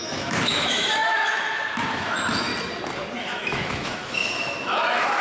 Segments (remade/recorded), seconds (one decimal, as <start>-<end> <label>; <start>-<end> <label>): 0.0-2.5 remade; 2.5-3.2 recorded; 3.2-5.2 remade